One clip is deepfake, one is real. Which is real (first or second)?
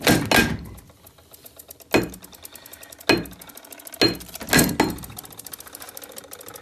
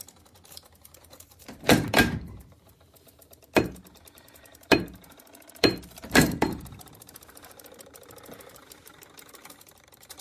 first